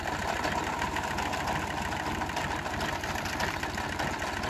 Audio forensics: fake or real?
real